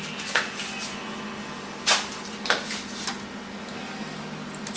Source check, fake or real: real